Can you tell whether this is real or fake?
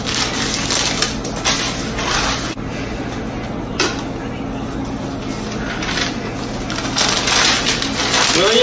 real